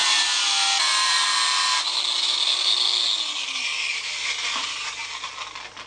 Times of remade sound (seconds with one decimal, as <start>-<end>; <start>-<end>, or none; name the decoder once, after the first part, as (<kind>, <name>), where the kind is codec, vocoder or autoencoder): 0.0-1.8 (vocoder, BigVGAN v2); 3.9-5.3